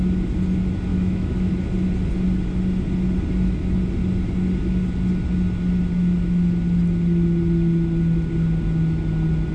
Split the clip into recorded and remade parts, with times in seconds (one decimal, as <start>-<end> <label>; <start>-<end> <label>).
0.0-0.9 recorded; 0.9-1.5 remade; 1.5-9.5 recorded